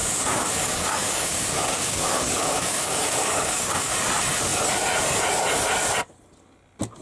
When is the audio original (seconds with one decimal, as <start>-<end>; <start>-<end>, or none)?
3.9-7.0